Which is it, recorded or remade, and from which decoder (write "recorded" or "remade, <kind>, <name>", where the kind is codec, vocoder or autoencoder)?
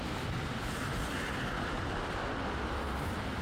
recorded